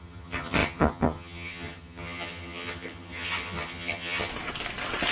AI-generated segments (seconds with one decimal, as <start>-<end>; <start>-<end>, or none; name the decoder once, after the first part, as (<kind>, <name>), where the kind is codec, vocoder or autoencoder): 0.0-4.3 (vocoder, HiFi-GAN)